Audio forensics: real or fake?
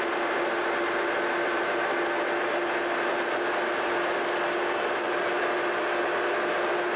real